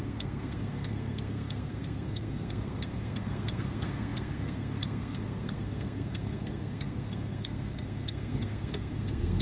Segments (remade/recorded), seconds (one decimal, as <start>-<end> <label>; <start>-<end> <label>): 0.0-9.4 remade

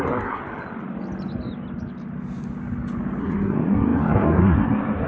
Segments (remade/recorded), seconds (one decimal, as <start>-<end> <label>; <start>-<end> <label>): 0.0-0.4 remade; 0.4-3.2 recorded; 3.2-5.1 remade

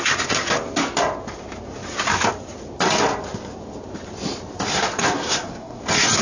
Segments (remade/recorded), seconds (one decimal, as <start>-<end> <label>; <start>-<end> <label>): 0.0-4.7 recorded; 4.7-5.8 remade; 5.8-6.2 recorded

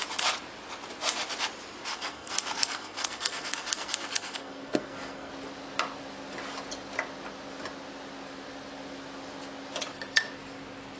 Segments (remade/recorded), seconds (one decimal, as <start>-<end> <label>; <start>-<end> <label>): 0.0-1.9 recorded; 1.9-5.3 remade; 5.3-11.0 recorded

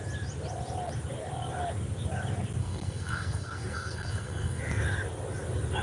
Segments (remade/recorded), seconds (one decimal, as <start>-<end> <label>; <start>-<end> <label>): 0.0-2.6 recorded; 2.6-4.6 remade; 4.6-5.8 recorded